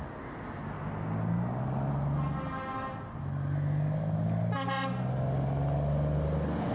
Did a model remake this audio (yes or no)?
no